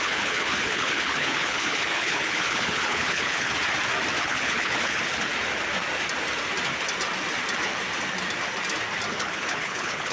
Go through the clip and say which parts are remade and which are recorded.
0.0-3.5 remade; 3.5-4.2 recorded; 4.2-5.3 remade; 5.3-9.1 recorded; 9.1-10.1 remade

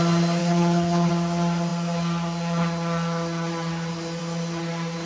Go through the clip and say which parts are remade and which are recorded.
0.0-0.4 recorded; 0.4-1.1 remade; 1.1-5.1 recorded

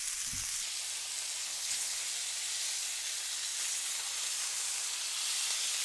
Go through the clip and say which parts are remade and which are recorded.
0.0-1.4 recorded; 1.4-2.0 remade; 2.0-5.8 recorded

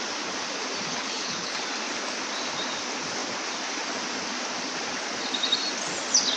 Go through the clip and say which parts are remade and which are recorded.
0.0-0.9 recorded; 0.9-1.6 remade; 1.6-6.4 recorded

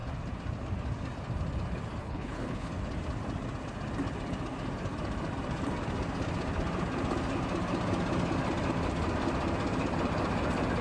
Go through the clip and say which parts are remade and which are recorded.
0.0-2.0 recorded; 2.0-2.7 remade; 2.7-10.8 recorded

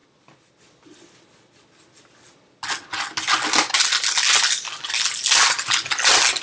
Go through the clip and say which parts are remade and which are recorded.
0.0-6.4 recorded

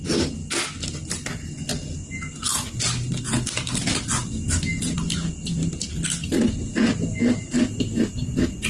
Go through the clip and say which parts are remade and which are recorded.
0.0-8.7 recorded